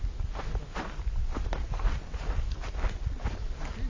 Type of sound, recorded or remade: recorded